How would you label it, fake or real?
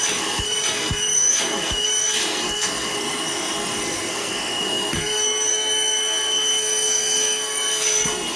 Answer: fake